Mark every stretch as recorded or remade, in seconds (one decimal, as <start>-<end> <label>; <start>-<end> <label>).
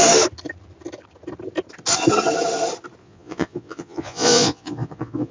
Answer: 0.0-3.0 recorded; 3.0-5.3 remade